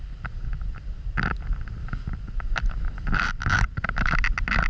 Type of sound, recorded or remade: recorded